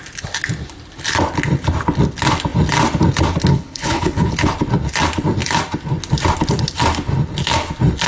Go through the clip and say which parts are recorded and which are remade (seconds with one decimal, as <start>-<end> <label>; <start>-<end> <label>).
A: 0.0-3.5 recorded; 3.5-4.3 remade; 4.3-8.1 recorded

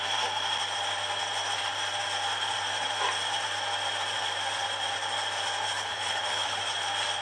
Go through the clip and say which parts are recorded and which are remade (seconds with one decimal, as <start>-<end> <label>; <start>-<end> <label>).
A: 0.0-5.7 recorded; 5.7-6.6 remade; 6.6-7.2 recorded

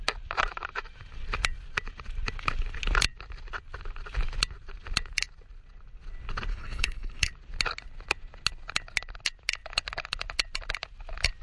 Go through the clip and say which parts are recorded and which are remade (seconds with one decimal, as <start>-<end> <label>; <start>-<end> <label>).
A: 0.0-6.5 recorded; 6.5-7.3 remade; 7.3-11.4 recorded

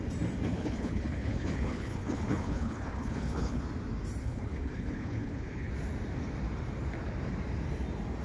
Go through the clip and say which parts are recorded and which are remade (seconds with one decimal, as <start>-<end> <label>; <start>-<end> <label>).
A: 0.0-0.5 recorded; 0.5-3.6 remade; 3.6-4.2 recorded; 4.2-5.7 remade; 5.7-8.2 recorded